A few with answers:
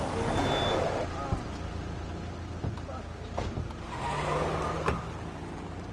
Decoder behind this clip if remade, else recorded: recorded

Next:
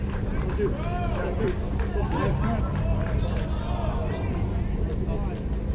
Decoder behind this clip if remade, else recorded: recorded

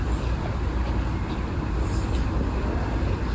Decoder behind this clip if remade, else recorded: recorded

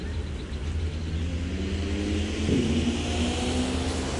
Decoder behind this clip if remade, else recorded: recorded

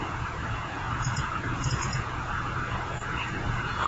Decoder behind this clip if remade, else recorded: remade, vocoder, Vocos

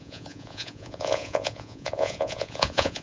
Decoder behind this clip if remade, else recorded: remade, vocoder, Vocos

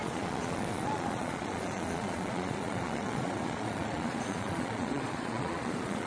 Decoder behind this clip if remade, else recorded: remade, vocoder, Vocos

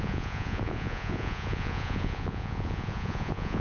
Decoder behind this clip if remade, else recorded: remade, vocoder, Vocos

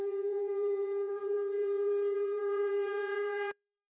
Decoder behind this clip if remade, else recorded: remade, vocoder, Vocos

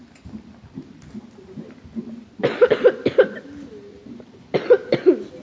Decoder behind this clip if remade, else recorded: recorded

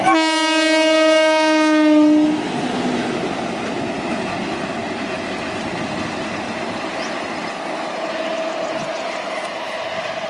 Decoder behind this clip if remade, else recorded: recorded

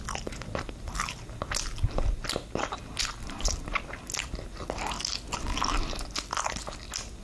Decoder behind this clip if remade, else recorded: recorded